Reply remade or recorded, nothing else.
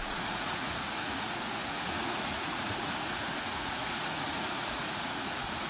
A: remade